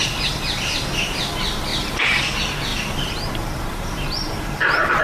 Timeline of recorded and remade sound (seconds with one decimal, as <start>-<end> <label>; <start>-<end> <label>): 0.0-1.7 recorded; 1.7-2.2 remade; 2.2-2.7 recorded; 2.7-5.0 remade